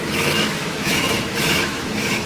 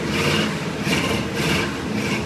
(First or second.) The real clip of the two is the second